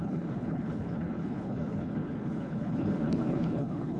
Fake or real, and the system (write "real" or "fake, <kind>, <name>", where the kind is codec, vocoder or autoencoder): fake, codec, HILCodec